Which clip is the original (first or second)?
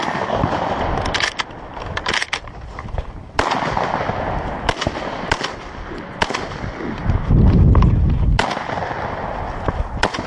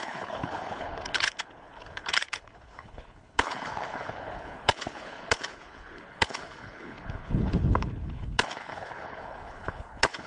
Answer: first